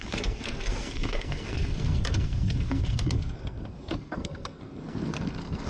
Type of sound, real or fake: fake